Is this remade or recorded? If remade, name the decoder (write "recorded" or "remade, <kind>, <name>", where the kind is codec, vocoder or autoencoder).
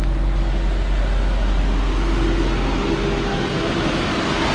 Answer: recorded